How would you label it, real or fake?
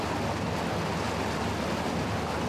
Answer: real